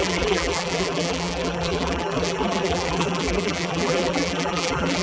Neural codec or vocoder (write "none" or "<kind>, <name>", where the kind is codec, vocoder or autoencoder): vocoder, BigVGAN v2